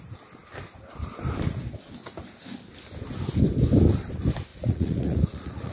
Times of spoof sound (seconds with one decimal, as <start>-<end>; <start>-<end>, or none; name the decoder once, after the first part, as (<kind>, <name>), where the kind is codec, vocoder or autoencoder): 4.5-5.7 (vocoder, Vocos)